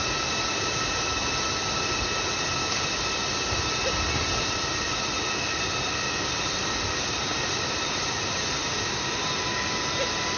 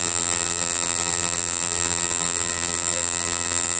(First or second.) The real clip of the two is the first